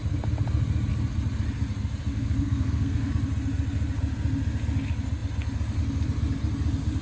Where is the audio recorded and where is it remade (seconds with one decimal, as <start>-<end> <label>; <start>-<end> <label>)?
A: 0.0-2.1 recorded; 2.1-3.1 remade; 3.1-7.0 recorded